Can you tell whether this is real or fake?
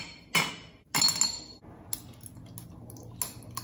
real